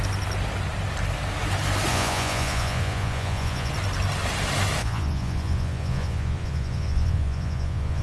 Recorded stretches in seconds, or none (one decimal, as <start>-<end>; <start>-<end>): 0.0-1.9; 3.7-4.8